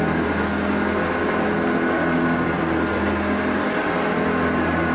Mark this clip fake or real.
real